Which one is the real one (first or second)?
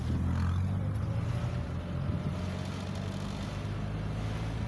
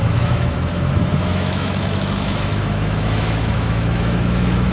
first